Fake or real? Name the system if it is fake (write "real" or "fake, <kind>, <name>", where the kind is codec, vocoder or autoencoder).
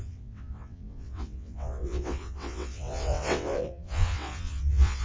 fake, vocoder, WaveNeXt